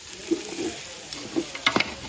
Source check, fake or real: real